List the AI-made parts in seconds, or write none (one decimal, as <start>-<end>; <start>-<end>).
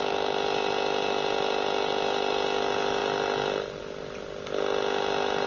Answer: none